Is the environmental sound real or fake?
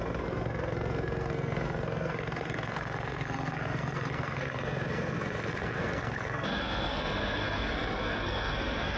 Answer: fake